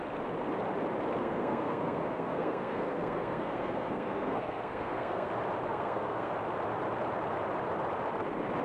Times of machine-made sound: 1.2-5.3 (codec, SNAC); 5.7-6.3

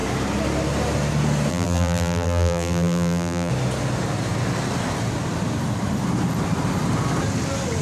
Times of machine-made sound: 1.5-3.5 (vocoder, BigVGAN v2)